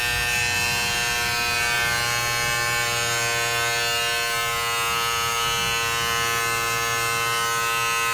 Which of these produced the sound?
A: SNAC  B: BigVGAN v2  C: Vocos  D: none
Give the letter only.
D